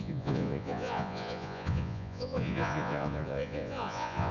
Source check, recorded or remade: remade